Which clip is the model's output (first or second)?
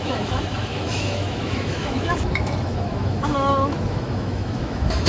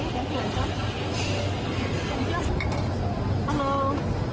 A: first